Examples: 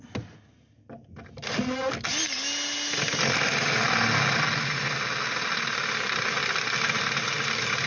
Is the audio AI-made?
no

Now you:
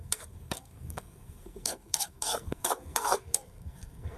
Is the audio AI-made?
yes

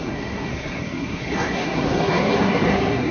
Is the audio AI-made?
yes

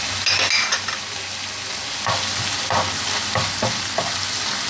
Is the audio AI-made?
no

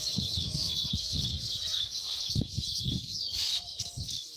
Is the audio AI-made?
yes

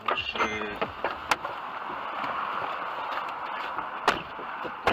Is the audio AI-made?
no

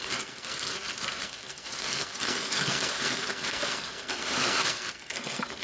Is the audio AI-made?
yes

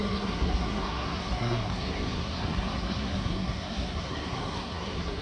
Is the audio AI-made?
yes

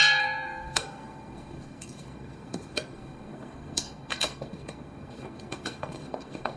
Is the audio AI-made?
yes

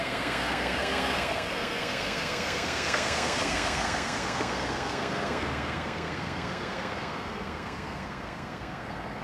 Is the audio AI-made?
yes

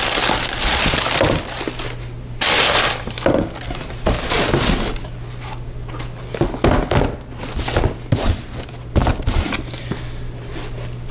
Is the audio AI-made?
no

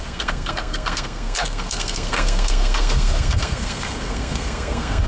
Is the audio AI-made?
yes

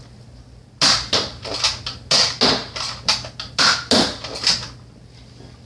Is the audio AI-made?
no